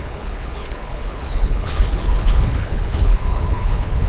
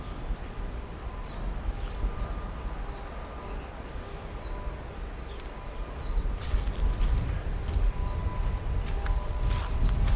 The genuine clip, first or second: second